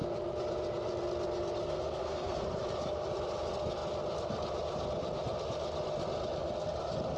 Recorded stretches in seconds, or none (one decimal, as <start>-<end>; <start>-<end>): 0.0-1.6; 2.4-7.2